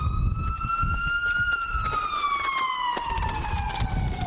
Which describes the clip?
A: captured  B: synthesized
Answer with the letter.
A